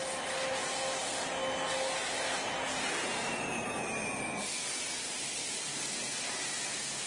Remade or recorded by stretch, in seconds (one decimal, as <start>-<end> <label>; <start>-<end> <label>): 0.0-7.1 recorded